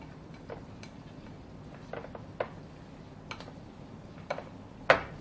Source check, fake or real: real